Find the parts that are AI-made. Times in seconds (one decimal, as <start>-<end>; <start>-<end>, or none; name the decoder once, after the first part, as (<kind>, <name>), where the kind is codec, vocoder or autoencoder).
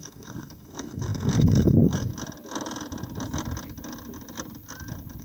0.0-2.1 (codec, SNAC)